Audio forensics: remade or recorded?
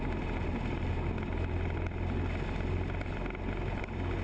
recorded